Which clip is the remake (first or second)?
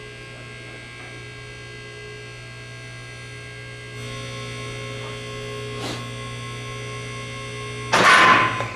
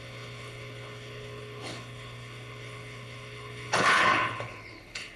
second